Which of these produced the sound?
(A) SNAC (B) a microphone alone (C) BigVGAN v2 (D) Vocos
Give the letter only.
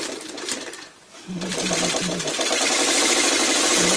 C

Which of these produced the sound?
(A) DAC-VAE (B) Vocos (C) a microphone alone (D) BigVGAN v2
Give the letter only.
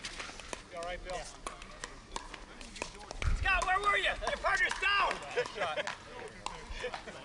C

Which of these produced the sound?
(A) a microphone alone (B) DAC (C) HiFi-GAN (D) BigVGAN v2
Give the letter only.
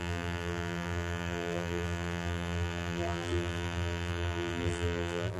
D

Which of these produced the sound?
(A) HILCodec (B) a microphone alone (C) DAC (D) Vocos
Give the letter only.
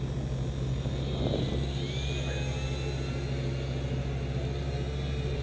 B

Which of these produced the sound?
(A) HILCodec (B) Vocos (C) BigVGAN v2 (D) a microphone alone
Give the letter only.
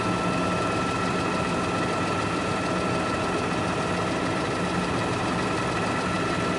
D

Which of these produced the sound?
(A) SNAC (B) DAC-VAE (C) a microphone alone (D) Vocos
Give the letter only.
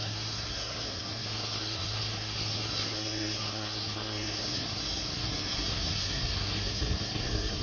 A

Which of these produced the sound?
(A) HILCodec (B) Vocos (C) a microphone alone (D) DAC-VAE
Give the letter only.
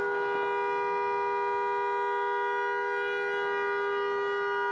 C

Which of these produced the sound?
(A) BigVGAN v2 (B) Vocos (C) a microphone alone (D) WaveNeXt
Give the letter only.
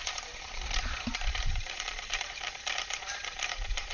A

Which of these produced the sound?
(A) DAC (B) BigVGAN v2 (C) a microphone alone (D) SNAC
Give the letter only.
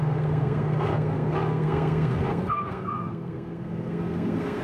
D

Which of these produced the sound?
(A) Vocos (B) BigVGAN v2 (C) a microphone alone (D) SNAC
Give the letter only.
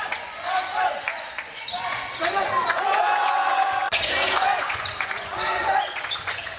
A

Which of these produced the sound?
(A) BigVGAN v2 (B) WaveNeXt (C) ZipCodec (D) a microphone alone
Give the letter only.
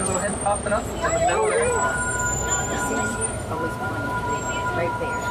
A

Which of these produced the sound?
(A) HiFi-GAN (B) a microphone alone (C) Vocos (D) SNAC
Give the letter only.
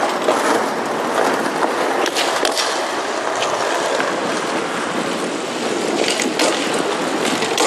B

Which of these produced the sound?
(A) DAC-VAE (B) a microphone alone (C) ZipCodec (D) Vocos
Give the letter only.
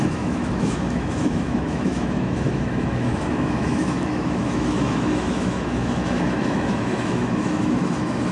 A